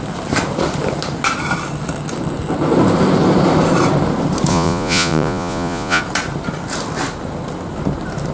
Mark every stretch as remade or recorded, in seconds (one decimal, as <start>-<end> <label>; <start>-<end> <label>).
0.0-4.5 recorded; 4.5-6.0 remade; 6.0-8.3 recorded